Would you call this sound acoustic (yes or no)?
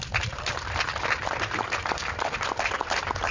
yes